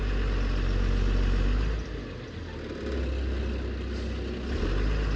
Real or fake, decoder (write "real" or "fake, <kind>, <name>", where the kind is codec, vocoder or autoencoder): real